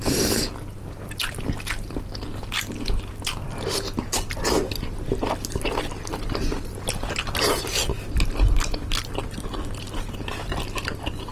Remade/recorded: recorded